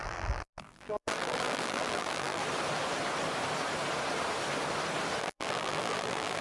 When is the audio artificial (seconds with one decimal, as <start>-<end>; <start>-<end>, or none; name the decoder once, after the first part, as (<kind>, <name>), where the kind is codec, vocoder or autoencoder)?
0.0-2.4 (vocoder, BigVGAN v2); 5.2-6.4